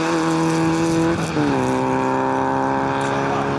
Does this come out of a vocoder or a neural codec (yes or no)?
no